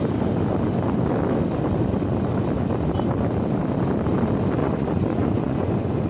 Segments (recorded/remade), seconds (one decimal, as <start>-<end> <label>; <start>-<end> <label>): 0.0-4.6 recorded; 4.6-6.1 remade